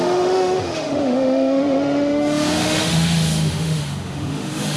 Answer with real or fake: fake